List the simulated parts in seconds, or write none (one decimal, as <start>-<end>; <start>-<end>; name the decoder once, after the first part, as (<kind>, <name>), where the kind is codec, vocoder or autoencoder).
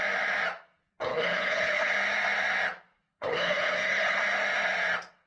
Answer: 1.1-1.9 (codec, HILCodec); 3.1-4.2